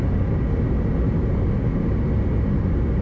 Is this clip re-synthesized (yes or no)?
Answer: no